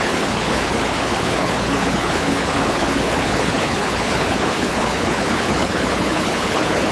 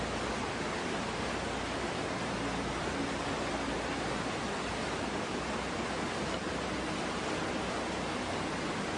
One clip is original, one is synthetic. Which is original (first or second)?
second